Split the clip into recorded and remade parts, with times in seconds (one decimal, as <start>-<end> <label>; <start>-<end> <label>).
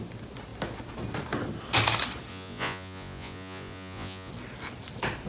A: 0.0-2.3 recorded; 2.3-4.3 remade; 4.3-5.3 recorded